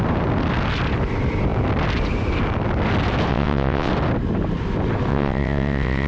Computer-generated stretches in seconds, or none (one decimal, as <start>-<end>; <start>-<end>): 3.3-3.9; 5.1-6.1